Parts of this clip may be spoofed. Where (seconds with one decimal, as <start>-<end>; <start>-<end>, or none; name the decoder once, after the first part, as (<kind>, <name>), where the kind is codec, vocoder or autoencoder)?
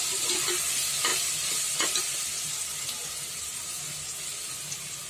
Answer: none